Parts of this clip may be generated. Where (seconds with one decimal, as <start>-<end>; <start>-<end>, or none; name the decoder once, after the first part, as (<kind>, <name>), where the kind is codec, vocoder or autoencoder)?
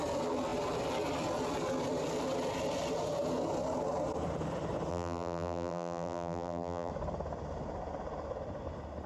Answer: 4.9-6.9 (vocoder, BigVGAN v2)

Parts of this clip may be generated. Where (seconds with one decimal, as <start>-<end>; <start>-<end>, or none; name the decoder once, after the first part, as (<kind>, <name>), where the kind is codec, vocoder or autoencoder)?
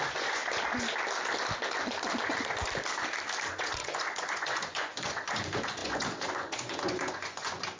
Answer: 0.0-0.4 (vocoder, Vocos); 3.5-7.8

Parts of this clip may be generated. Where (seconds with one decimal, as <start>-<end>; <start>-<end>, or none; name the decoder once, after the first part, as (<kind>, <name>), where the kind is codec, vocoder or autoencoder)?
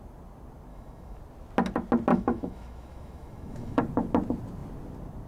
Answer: 0.7-1.2 (autoencoder, DAC-VAE); 2.1-3.8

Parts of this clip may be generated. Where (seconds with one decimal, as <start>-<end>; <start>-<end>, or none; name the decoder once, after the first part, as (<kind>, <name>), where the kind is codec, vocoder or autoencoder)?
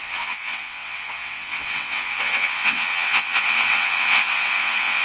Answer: 0.0-5.0 (vocoder, WaveNeXt)